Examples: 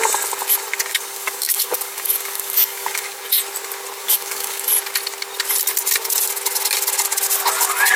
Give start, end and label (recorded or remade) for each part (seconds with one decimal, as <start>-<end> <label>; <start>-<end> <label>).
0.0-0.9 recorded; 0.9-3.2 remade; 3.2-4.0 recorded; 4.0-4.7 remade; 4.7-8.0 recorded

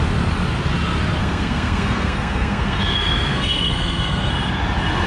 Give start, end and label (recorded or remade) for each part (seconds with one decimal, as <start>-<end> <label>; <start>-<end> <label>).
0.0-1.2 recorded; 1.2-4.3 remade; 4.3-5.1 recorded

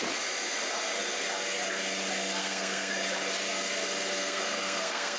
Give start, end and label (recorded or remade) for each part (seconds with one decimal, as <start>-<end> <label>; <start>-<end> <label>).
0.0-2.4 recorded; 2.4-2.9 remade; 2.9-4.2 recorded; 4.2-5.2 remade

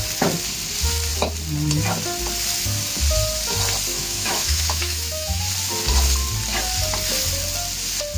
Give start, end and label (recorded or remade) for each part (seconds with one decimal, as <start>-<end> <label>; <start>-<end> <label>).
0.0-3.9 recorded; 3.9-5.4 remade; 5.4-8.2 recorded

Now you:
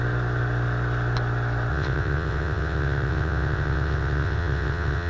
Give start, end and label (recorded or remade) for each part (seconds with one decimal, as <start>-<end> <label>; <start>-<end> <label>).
0.0-1.7 recorded; 1.7-5.1 remade